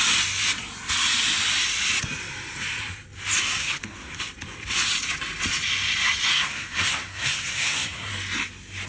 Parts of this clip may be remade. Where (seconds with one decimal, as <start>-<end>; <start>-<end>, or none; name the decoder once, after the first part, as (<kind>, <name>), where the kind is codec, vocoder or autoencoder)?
3.6-4.2 (codec, SNAC); 6.3-8.1

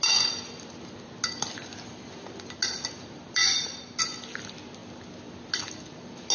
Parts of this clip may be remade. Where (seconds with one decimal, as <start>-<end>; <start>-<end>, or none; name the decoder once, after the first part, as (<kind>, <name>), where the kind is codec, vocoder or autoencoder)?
3.4-4.0 (vocoder, BigVGAN v2)

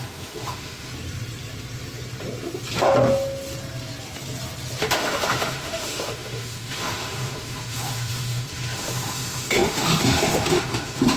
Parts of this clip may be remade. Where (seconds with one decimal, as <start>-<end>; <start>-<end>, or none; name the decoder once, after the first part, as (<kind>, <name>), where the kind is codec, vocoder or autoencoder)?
0.0-0.9 (autoencoder, DAC-VAE); 4.8-11.2

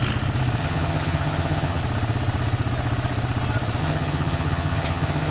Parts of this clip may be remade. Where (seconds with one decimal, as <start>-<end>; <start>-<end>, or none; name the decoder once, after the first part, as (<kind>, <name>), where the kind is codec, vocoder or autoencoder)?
0.6-1.8 (vocoder, HiFi-GAN); 3.8-5.3

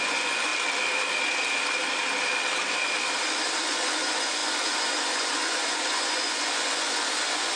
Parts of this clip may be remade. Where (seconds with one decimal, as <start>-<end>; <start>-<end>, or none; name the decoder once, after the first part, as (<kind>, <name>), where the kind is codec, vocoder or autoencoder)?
0.0-0.5 (vocoder, Vocos); 3.6-7.6

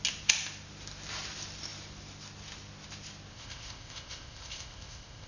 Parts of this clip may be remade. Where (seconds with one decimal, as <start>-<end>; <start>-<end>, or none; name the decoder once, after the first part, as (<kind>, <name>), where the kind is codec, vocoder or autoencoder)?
3.3-5.3 (codec, ZipCodec)

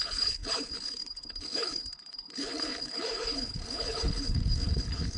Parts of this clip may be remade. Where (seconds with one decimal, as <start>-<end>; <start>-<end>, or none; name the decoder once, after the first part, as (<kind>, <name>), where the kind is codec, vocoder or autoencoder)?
0.0-5.2 (codec, HILCodec)

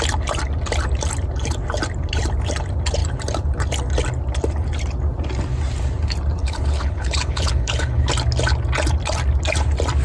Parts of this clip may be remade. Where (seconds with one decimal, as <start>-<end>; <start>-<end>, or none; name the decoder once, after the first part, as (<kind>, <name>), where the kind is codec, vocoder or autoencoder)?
6.4-8.1 (codec, HILCodec)